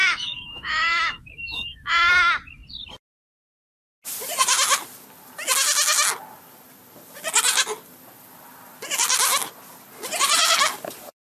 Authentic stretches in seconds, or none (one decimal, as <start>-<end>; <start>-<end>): 2.1-11.4